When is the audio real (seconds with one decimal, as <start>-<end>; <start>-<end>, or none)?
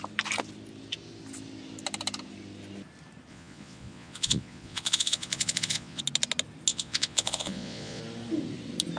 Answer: 0.0-3.3; 6.0-6.7; 8.0-9.0